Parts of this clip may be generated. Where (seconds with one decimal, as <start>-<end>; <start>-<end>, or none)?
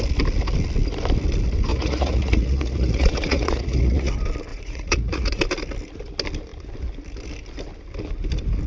1.7-4.1; 4.5-5.4